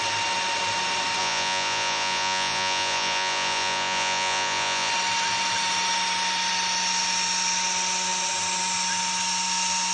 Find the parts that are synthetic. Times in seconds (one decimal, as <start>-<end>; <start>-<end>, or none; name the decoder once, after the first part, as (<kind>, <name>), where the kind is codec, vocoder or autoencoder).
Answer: 1.2-4.9 (vocoder, Vocos)